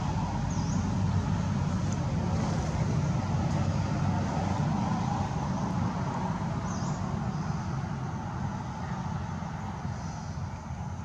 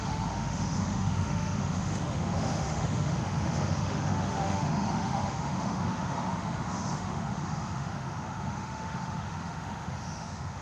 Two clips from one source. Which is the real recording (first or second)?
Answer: first